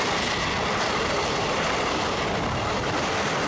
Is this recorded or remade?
recorded